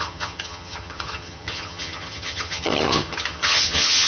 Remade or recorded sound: remade